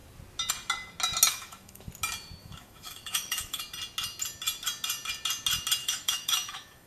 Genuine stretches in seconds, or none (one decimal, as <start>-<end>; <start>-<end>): 0.0-1.3; 1.9-2.4; 3.6-5.8